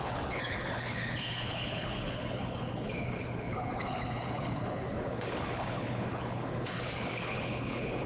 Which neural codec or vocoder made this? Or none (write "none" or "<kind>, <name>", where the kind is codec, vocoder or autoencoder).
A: codec, HILCodec